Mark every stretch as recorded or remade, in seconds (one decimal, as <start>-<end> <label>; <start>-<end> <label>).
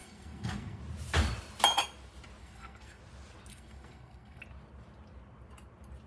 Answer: 0.0-0.8 remade; 0.8-2.4 recorded; 2.4-3.0 remade; 3.0-3.5 recorded; 3.5-4.4 remade; 4.4-6.1 recorded